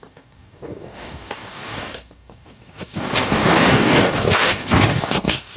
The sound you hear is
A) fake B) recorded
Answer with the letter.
A